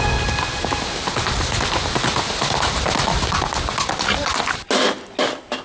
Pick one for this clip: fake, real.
real